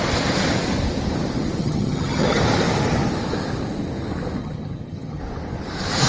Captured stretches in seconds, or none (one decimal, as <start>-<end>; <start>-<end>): 0.0-1.6; 2.4-4.4; 5.2-6.1